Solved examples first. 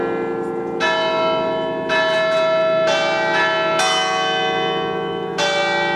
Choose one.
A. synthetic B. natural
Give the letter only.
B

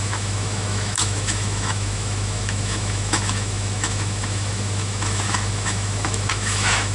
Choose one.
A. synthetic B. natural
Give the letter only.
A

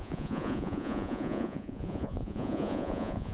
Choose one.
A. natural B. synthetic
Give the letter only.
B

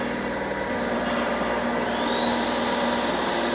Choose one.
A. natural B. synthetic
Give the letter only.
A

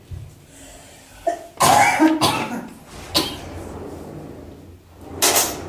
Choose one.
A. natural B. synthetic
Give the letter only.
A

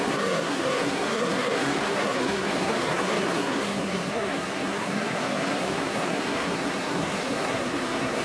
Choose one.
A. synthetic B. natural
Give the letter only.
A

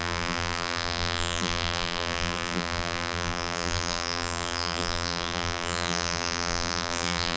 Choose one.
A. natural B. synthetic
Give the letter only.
B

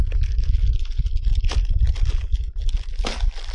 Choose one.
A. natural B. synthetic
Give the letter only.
A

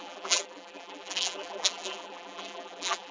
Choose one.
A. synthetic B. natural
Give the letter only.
A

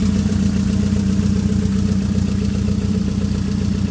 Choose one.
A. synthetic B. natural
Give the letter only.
B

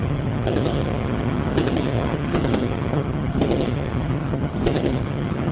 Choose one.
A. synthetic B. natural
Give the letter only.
A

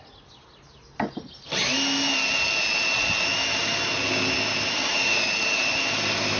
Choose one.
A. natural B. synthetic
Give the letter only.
A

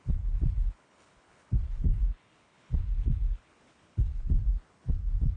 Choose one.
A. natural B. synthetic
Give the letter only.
B